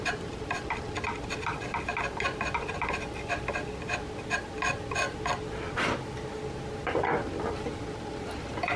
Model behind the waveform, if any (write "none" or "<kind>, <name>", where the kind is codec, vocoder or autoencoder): none